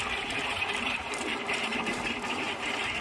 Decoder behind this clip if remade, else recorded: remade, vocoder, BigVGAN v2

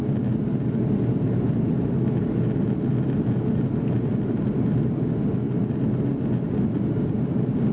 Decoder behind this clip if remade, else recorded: recorded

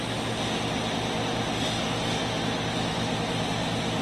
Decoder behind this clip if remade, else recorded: recorded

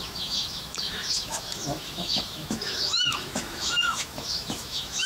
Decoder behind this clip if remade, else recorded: remade, autoencoder, DAC-VAE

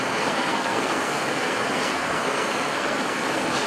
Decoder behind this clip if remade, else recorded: remade, codec, SNAC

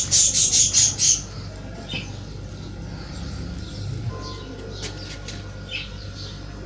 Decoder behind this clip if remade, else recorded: recorded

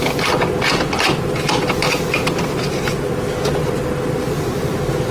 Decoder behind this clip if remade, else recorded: recorded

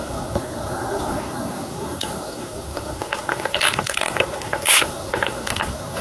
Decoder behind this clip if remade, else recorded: remade, codec, SNAC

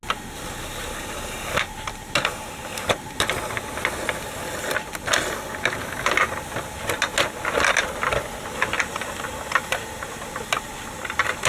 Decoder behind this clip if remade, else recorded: recorded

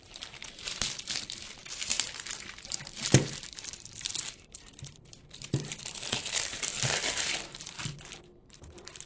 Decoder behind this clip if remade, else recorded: remade, vocoder, BigVGAN v2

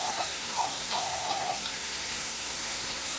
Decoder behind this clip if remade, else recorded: remade, codec, SNAC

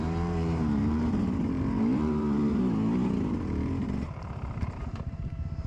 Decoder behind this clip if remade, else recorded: remade, vocoder, BigVGAN v2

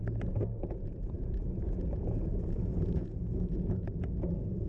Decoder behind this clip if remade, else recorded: remade, vocoder, Vocos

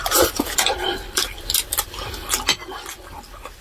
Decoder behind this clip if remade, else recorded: recorded